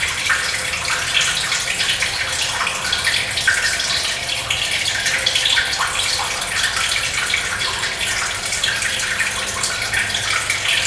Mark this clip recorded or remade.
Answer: recorded